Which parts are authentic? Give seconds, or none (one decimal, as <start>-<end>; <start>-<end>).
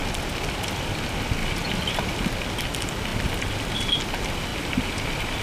0.0-1.4; 2.1-3.1; 3.8-4.5